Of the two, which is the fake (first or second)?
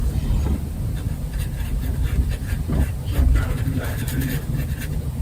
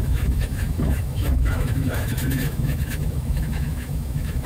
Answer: second